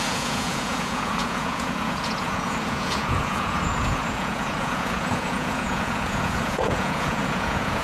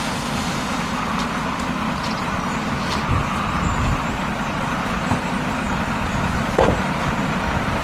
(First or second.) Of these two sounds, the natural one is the second